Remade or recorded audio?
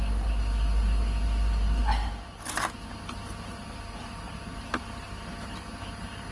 recorded